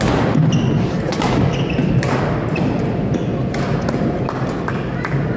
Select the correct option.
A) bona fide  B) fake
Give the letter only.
A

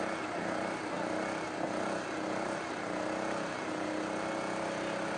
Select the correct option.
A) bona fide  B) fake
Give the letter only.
A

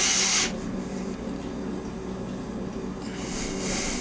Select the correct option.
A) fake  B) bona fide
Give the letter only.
B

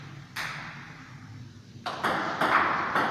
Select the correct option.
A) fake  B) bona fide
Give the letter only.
B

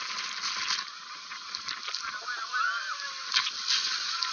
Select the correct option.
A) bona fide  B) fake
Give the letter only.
A